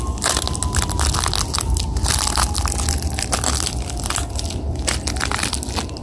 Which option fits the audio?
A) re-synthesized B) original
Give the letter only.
B